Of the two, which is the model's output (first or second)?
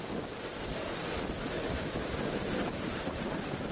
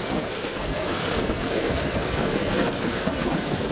second